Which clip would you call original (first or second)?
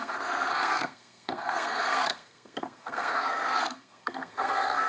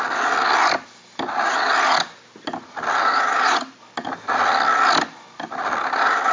second